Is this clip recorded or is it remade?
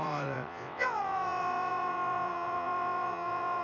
remade